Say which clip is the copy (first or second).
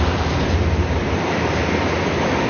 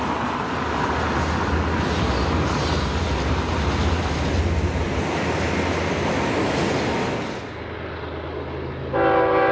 first